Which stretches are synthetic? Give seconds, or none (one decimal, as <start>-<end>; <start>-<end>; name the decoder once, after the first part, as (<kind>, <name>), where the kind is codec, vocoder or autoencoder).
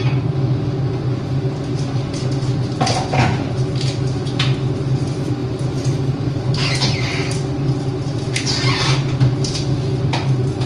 5.4-6.4 (vocoder, BigVGAN v2)